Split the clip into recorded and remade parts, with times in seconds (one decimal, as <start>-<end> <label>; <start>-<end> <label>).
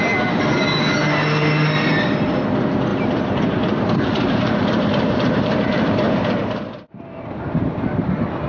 0.0-2.9 recorded; 2.9-6.6 remade; 6.6-8.5 recorded